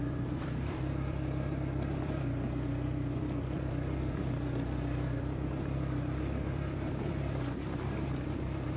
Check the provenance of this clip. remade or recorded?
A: remade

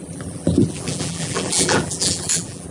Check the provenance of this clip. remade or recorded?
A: remade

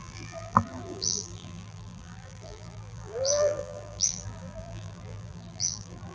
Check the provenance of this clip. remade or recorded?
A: remade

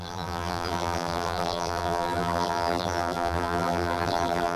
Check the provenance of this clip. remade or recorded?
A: remade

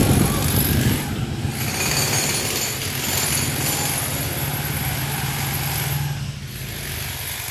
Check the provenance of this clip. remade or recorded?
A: recorded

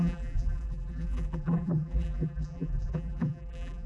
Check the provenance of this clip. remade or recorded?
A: remade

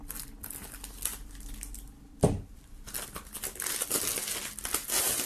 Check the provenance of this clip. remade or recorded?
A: recorded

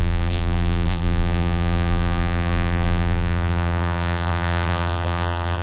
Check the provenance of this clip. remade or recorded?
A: remade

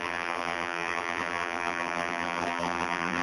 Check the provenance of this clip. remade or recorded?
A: remade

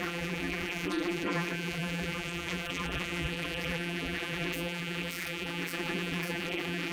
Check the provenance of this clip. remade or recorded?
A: remade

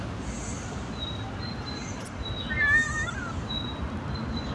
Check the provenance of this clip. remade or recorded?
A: recorded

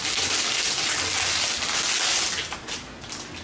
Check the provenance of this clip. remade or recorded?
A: recorded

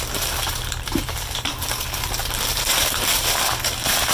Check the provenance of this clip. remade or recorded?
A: remade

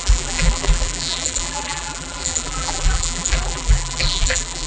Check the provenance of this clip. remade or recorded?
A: remade